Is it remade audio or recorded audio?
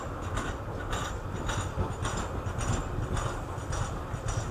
recorded